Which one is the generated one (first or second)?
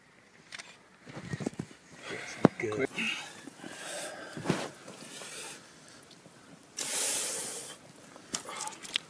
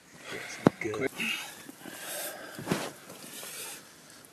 second